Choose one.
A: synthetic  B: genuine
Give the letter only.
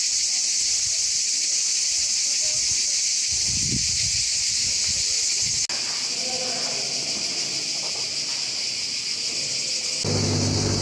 B